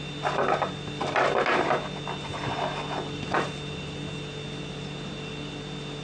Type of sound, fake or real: real